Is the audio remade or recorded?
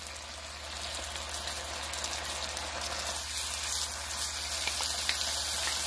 recorded